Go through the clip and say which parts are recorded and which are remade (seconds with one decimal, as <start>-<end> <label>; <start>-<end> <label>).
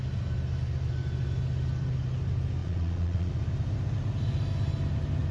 0.0-2.6 recorded; 2.6-3.3 remade; 3.3-5.3 recorded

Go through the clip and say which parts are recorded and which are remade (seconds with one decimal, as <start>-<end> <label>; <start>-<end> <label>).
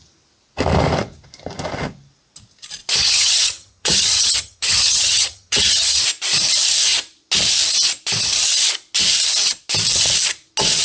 0.0-3.0 recorded; 3.0-6.0 remade; 6.0-10.8 recorded